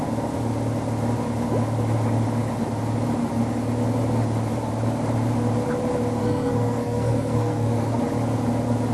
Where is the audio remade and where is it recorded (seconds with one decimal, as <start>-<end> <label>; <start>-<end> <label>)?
0.0-6.2 recorded; 6.2-8.0 remade; 8.0-8.9 recorded